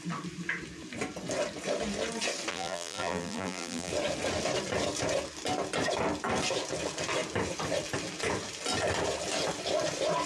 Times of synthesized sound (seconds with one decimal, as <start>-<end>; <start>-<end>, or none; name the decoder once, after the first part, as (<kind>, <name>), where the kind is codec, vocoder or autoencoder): 2.5-3.9 (vocoder, BigVGAN v2)